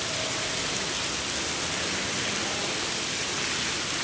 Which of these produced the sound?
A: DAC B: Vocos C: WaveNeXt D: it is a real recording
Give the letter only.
D